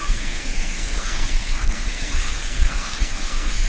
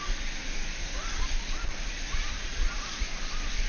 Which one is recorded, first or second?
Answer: second